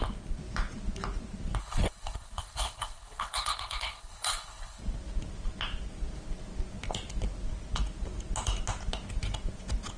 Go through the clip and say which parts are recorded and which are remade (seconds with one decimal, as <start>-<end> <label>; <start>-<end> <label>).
0.0-1.6 recorded; 1.6-4.8 remade; 4.8-10.0 recorded